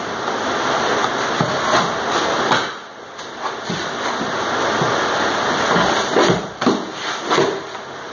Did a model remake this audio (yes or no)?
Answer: no